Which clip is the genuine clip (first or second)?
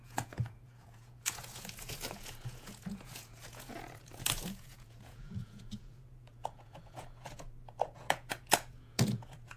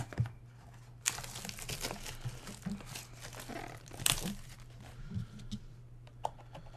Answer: second